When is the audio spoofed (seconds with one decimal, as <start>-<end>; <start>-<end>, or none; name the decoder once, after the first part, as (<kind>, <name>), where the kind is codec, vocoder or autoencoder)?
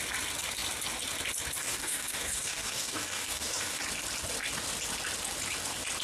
1.6-3.8 (codec, DAC)